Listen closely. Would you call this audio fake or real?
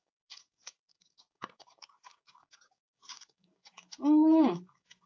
fake